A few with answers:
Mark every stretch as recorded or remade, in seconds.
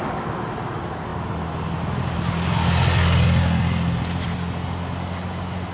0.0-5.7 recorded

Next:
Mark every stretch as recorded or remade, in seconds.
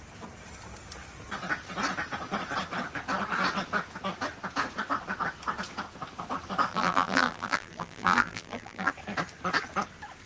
0.0-6.7 recorded; 6.7-8.9 remade; 8.9-10.3 recorded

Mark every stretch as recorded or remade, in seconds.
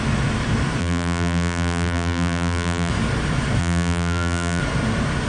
0.0-0.8 recorded; 0.8-2.9 remade; 2.9-3.6 recorded; 3.6-4.6 remade; 4.6-5.3 recorded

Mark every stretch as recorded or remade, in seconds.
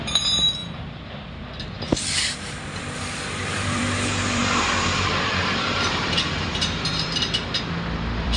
0.0-0.6 remade; 0.6-3.0 recorded; 3.0-8.4 remade